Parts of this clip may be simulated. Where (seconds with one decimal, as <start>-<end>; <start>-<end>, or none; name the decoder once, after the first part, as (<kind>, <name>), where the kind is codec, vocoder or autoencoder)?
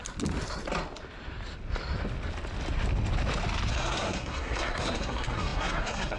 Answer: 3.7-6.2 (codec, SNAC)